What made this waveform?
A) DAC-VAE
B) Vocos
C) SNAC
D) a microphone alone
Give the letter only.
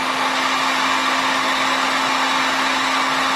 D